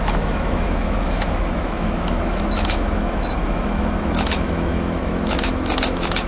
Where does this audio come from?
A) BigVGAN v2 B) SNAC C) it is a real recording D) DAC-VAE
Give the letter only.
D